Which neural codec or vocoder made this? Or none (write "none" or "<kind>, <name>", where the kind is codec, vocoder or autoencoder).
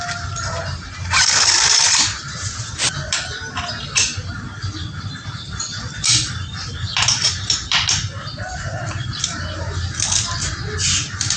vocoder, BigVGAN v2